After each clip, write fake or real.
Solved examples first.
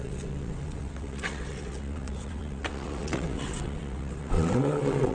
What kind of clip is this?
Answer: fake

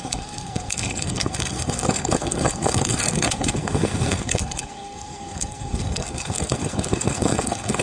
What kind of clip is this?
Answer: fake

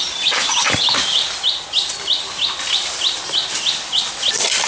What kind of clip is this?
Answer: real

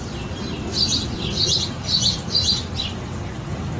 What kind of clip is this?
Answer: fake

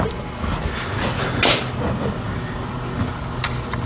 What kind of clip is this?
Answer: real